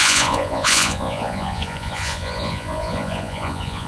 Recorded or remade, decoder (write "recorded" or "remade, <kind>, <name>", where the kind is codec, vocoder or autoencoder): remade, vocoder, Vocos